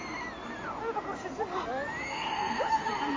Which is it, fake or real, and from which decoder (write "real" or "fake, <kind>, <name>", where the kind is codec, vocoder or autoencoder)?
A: real